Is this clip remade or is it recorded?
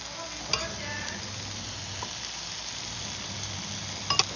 recorded